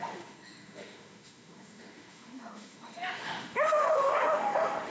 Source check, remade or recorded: remade